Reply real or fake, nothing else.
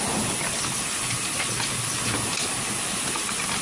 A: real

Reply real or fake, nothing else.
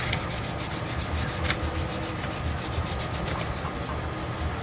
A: real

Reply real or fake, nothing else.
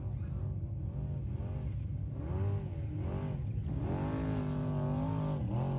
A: real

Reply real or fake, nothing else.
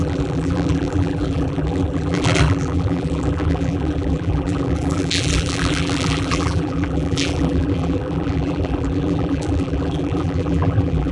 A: fake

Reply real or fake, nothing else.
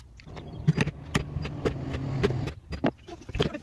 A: real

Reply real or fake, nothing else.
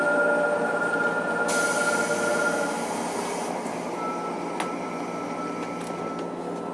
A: real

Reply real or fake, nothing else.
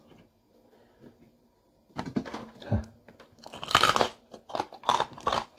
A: real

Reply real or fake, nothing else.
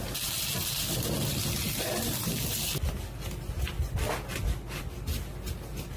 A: real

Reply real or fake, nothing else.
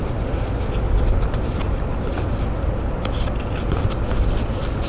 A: real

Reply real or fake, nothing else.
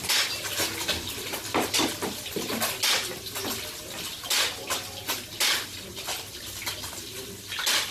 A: real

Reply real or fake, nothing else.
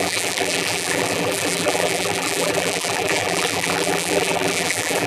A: fake